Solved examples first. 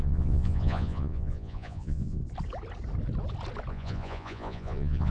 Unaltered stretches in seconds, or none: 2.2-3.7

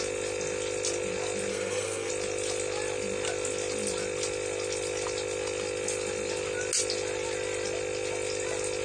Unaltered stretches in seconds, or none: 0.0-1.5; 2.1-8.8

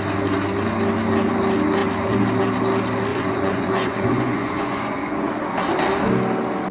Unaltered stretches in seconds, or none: 0.0-3.1; 5.3-6.7

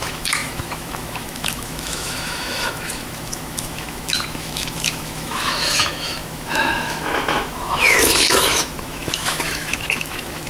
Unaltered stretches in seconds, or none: none

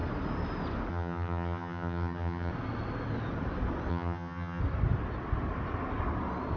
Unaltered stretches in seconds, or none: 0.0-0.9; 2.5-3.9; 4.6-6.6

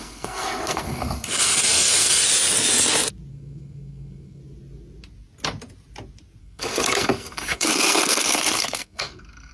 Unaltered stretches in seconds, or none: 2.2-3.3; 4.4-6.4